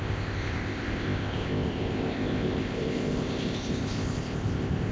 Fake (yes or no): yes